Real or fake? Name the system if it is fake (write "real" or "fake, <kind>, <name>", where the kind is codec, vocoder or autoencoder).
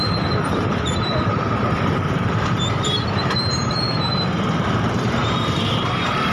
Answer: fake, vocoder, BigVGAN v2